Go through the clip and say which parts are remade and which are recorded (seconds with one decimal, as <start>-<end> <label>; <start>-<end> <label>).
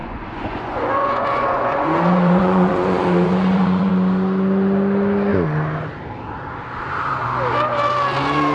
0.0-3.9 remade; 3.9-8.5 recorded